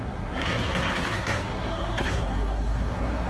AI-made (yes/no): yes